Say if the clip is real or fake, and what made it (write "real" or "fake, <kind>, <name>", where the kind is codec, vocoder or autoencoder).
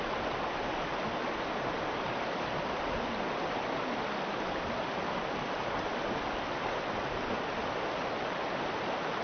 real